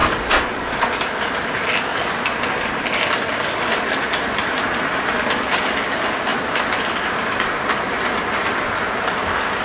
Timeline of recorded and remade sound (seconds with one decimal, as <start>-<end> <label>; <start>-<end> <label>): 0.0-0.6 remade; 0.6-6.3 recorded; 6.3-8.7 remade; 8.7-9.6 recorded